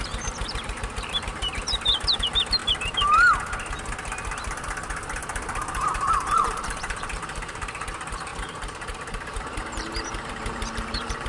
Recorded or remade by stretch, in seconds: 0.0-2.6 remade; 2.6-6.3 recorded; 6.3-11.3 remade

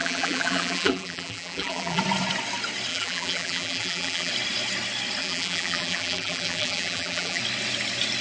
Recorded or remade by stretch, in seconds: 0.0-2.0 remade; 2.0-2.9 recorded; 2.9-4.3 remade; 4.3-5.2 recorded; 5.2-7.4 remade; 7.4-8.2 recorded

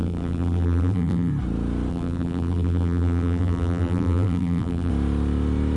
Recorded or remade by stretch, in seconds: 0.0-1.3 remade; 1.3-1.9 recorded; 1.9-4.9 remade; 4.9-5.8 recorded

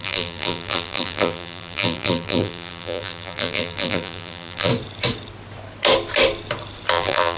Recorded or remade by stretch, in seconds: 0.0-4.7 remade; 4.7-6.9 recorded; 6.9-7.4 remade

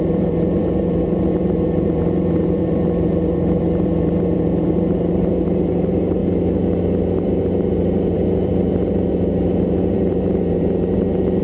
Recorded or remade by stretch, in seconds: 0.0-6.2 remade; 6.2-7.2 recorded; 7.2-11.4 remade

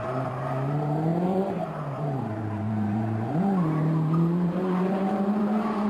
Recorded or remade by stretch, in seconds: 0.0-5.9 remade

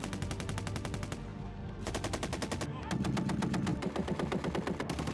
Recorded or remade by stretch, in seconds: 0.0-1.3 recorded; 1.3-1.9 remade; 1.9-3.7 recorded; 3.7-4.5 remade; 4.5-5.1 recorded